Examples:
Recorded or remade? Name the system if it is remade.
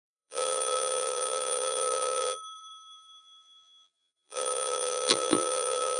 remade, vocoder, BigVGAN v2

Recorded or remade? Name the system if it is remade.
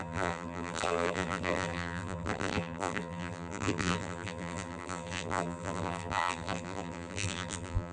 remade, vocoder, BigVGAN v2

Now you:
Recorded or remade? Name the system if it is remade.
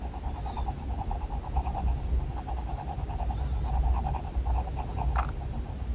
recorded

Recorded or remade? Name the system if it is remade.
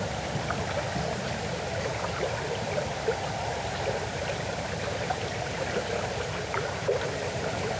recorded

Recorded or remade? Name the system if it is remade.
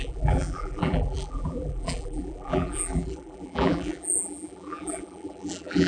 remade, vocoder, BigVGAN v2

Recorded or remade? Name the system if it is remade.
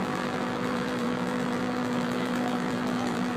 remade, vocoder, BigVGAN v2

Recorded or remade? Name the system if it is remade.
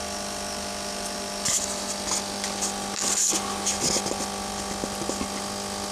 recorded